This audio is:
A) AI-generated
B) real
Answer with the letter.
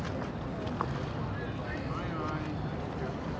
B